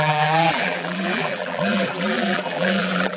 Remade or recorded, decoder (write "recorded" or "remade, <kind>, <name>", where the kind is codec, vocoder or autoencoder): remade, vocoder, BigVGAN v2